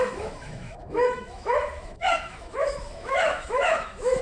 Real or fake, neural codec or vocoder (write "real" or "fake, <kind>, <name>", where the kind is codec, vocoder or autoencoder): fake, autoencoder, DAC-VAE